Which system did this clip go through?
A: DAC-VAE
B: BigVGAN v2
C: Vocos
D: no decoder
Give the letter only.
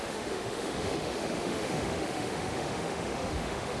A